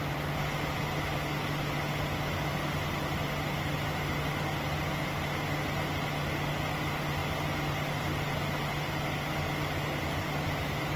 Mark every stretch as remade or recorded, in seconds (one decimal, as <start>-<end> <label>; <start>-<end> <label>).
0.0-11.0 recorded